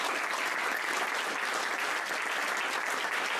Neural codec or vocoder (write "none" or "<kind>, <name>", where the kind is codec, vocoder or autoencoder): vocoder, BigVGAN v2